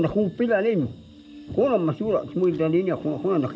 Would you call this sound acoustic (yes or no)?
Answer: yes